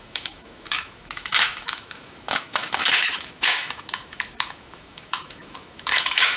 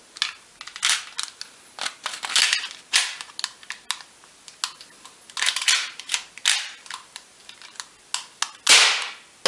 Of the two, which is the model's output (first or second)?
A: first